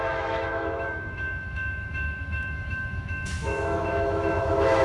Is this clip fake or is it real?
fake